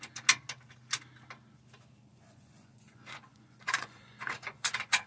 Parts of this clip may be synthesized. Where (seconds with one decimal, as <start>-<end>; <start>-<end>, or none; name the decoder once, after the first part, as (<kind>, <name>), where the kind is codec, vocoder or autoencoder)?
2.1-5.1 (vocoder, Vocos)